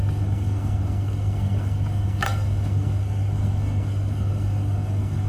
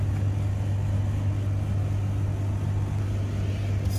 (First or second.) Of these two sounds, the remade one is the first